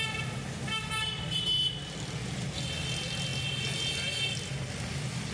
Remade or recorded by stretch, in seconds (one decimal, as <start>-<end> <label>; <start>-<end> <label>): 0.0-5.3 recorded